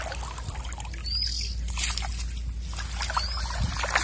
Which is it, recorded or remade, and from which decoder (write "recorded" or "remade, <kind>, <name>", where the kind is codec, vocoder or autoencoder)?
recorded